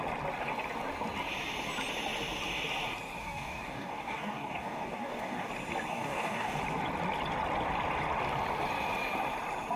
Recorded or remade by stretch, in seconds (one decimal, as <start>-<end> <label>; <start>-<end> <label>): 0.0-3.2 recorded; 3.2-5.5 remade; 5.5-5.9 recorded; 5.9-6.6 remade; 6.6-9.8 recorded